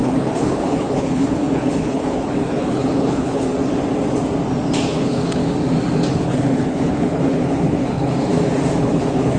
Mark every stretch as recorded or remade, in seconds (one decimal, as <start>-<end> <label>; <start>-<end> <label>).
0.0-3.5 remade; 3.5-4.8 recorded; 4.8-5.4 remade; 5.4-6.1 recorded; 6.1-8.3 remade; 8.3-8.8 recorded; 8.8-9.4 remade